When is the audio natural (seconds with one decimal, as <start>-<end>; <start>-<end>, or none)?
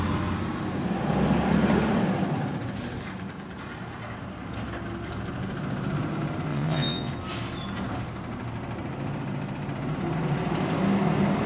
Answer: 0.0-6.5; 7.1-11.5